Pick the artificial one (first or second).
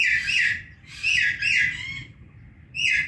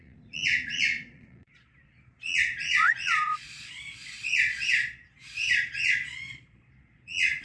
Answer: second